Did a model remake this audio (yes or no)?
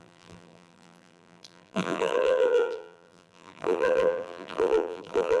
yes